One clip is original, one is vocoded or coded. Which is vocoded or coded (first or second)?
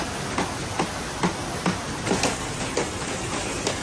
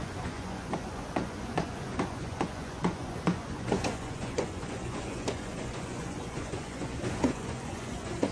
second